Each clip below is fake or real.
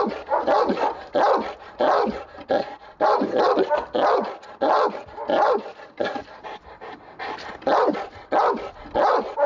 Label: real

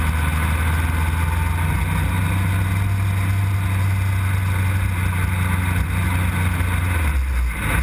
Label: real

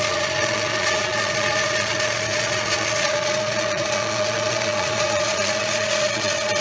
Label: fake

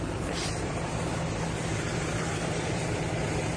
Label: fake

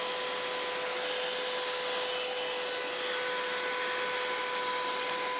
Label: real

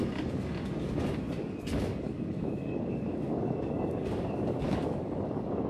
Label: fake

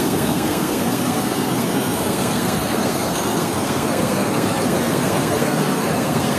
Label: fake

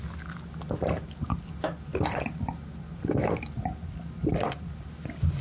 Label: real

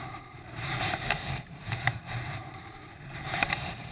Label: fake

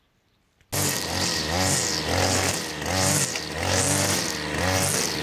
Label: real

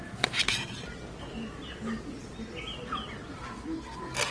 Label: real